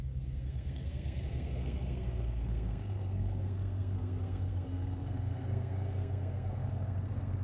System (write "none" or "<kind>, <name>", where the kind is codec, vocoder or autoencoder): codec, SNAC